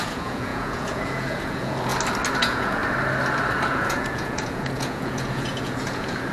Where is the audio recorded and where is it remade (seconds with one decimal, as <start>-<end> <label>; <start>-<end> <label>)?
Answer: 0.0-1.9 remade; 1.9-2.4 recorded; 2.4-2.8 remade; 2.8-3.7 recorded; 3.7-6.3 remade